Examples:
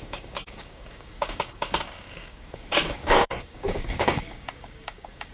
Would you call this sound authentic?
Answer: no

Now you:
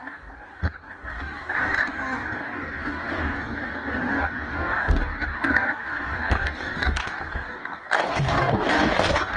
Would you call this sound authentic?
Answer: no